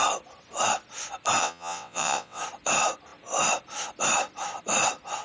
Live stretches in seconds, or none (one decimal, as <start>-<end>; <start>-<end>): 0.0-1.4; 2.4-5.2

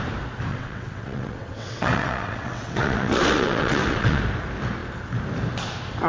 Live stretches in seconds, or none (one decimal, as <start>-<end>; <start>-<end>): 0.0-0.5; 4.2-6.1